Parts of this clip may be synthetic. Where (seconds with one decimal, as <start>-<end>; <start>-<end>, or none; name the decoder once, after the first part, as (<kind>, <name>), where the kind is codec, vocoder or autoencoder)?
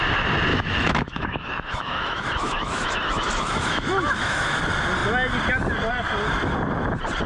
0.5-4.6 (autoencoder, DAC-VAE)